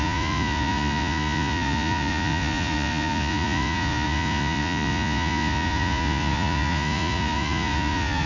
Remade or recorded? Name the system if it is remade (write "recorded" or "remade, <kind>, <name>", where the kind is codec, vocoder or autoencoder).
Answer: remade, vocoder, Vocos